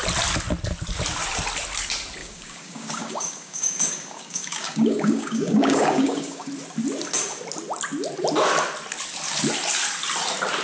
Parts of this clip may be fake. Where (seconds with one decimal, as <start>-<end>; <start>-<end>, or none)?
2.2-6.5